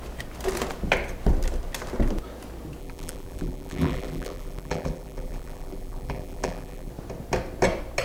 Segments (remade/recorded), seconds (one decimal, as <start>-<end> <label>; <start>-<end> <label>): 0.0-2.8 recorded; 2.8-6.9 remade; 6.9-8.0 recorded